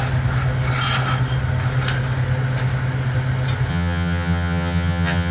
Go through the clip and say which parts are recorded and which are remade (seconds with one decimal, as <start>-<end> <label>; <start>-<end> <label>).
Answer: 0.0-3.7 recorded; 3.7-5.3 remade

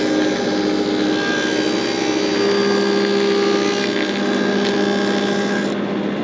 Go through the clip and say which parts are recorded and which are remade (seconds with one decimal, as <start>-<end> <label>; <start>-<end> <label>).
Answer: 0.0-6.2 recorded